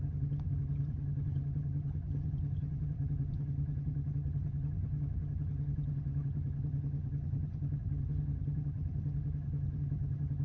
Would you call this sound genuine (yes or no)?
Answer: no